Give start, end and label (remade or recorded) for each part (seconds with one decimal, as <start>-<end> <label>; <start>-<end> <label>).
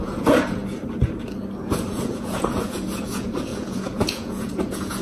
0.0-0.6 remade; 0.6-2.0 recorded; 2.0-5.0 remade